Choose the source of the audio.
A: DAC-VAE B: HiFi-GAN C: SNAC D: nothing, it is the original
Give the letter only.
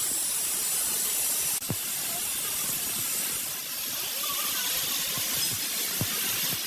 D